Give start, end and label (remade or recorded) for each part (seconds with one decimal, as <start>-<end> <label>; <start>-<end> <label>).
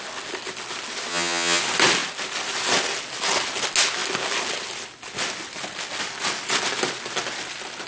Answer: 0.0-1.1 recorded; 1.1-1.6 remade; 1.6-7.9 recorded